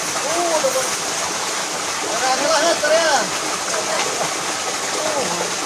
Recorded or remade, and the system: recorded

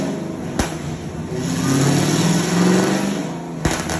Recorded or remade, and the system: recorded